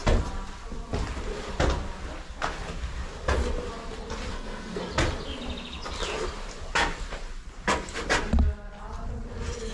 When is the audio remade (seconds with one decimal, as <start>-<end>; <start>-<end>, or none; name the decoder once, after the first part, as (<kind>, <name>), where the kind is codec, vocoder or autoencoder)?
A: 4.3-4.8 (codec, SNAC)